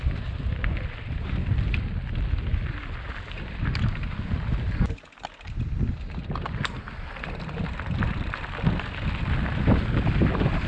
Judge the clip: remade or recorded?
recorded